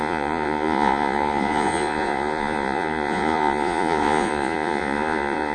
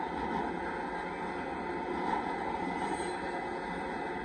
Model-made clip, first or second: first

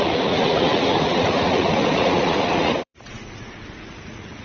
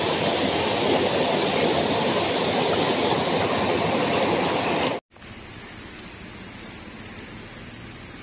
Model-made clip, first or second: first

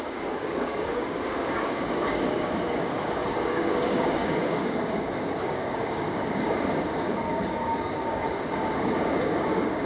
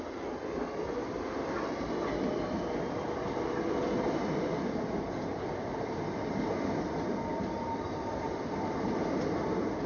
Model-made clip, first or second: first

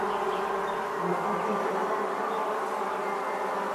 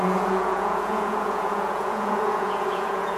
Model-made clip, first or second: second